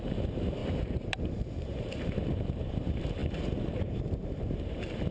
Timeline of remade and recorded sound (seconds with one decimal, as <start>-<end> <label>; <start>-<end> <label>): 0.0-0.6 remade; 0.6-1.2 recorded; 1.2-5.1 remade